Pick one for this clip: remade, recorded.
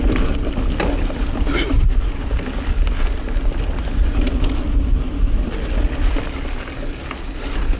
recorded